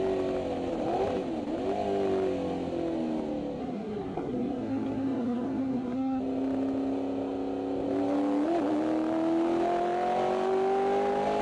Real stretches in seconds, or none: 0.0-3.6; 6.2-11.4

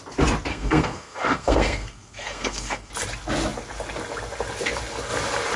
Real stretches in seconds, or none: 0.0-0.5; 2.9-5.6

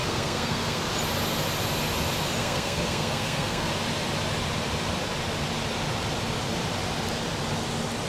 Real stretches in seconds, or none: 0.9-2.4; 3.7-8.1